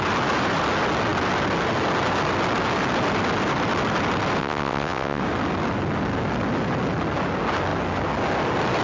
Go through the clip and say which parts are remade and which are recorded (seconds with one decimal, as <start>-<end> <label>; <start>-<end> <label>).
0.0-4.4 recorded; 4.4-5.2 remade; 5.2-8.8 recorded